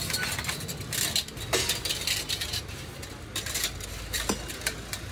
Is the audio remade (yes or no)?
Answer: no